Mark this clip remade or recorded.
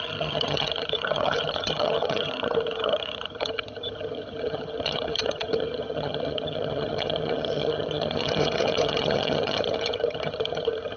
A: remade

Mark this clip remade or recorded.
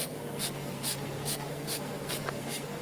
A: remade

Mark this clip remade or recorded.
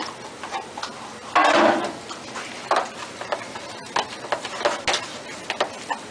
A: recorded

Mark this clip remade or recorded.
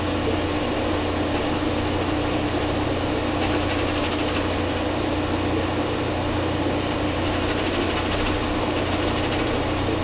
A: recorded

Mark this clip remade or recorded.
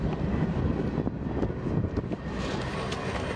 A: recorded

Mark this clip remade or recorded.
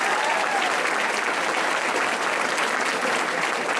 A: recorded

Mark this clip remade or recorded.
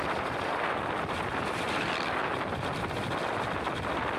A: remade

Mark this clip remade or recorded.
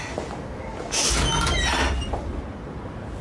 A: recorded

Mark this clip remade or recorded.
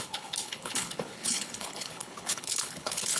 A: remade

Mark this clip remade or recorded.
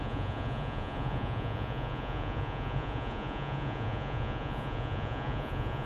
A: remade